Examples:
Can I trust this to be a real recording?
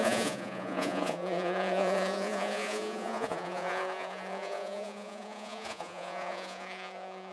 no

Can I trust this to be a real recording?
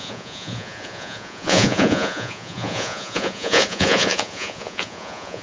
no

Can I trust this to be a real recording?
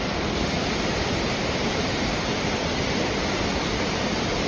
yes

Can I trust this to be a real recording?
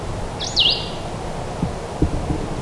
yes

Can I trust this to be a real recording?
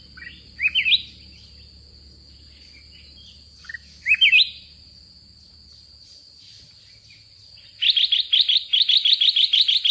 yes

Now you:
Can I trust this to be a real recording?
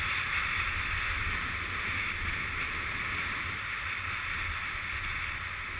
yes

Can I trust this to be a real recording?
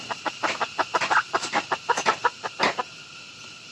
yes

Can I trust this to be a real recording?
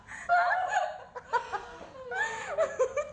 yes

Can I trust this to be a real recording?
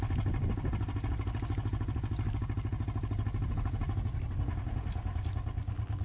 yes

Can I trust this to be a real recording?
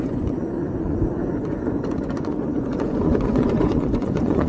no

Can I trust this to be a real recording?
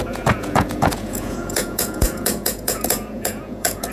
no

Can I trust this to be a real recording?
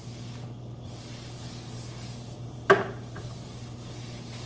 yes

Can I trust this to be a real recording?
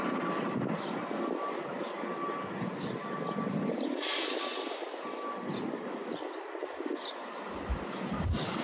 yes